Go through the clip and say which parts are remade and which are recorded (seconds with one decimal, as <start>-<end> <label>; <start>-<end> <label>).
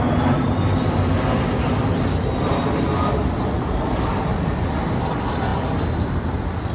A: 0.0-6.7 recorded